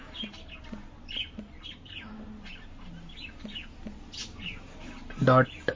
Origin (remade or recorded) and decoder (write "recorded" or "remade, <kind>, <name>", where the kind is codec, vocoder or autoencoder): recorded